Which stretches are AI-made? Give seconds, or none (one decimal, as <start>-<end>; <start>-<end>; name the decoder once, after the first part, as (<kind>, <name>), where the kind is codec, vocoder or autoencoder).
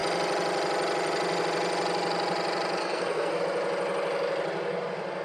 2.8-3.4 (codec, SNAC)